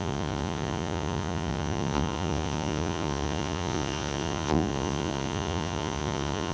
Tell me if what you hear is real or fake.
fake